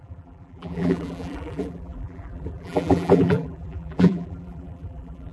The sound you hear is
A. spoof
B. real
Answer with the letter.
A